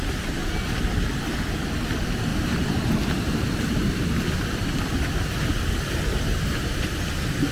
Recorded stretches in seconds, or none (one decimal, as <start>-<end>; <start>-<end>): 0.0-2.3; 5.5-7.5